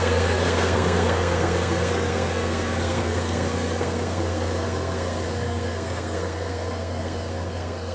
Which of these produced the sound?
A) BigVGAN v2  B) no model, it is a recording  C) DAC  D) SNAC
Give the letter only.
D